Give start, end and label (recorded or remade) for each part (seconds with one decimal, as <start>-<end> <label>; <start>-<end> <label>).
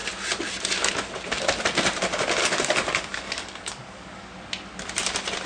0.0-2.4 recorded; 2.4-4.3 remade; 4.3-5.5 recorded